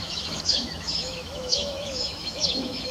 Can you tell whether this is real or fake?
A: fake